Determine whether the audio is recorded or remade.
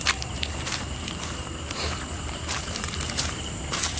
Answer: remade